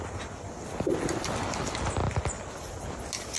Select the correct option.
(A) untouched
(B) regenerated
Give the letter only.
A